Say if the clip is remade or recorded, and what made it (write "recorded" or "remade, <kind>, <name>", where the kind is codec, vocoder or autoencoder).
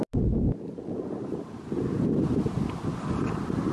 recorded